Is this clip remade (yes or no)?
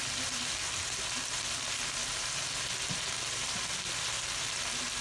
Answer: no